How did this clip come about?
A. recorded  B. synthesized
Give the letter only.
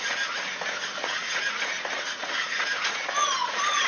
B